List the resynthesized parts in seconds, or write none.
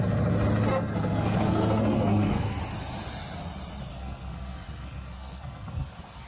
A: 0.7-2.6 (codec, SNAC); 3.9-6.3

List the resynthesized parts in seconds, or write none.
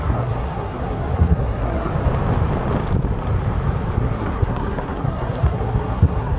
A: 0.0-1.9 (codec, SNAC); 4.0-6.4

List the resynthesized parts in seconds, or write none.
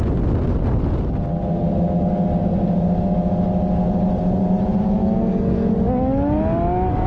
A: 5.0-5.7 (codec, SNAC)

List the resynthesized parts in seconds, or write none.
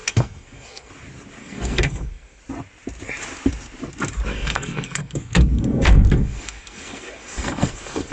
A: 0.0-0.9 (codec, SNAC); 1.4-2.4; 4.3-8.1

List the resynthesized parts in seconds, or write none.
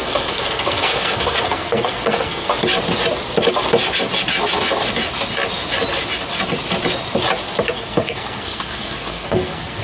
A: 0.0-2.5 (codec, SNAC); 7.6-9.8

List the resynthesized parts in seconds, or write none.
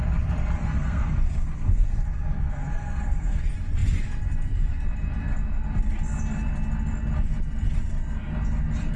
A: 0.6-3.4 (codec, SNAC)